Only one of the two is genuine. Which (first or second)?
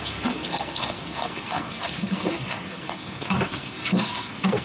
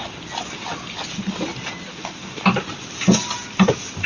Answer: second